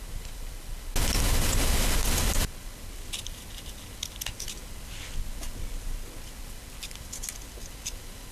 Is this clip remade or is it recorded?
recorded